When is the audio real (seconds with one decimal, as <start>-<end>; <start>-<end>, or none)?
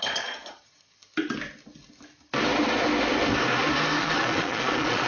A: 0.9-4.0